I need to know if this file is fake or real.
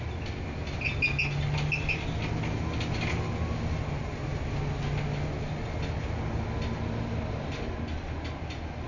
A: real